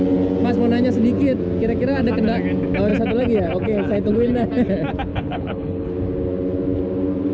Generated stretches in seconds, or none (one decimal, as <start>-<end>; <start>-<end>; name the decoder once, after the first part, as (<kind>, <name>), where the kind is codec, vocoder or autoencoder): 5.1-5.9 (codec, HILCodec)